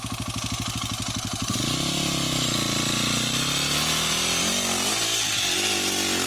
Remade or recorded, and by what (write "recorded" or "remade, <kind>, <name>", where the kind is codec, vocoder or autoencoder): recorded